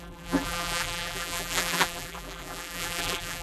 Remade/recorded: remade